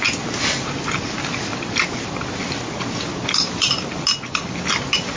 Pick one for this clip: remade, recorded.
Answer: recorded